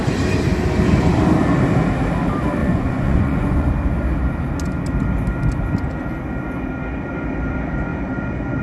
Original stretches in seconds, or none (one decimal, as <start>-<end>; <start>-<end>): 0.0-2.6; 3.7-8.6